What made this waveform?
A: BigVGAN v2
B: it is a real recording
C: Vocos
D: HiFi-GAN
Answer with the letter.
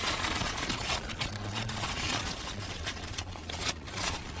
C